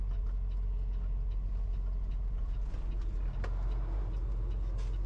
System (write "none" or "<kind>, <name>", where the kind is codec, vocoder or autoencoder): none